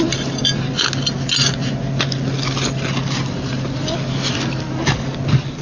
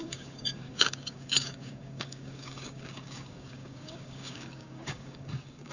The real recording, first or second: first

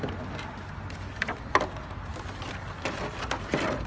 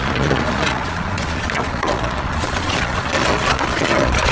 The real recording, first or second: first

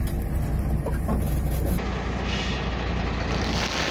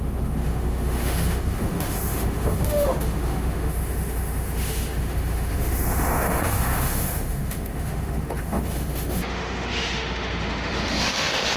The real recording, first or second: first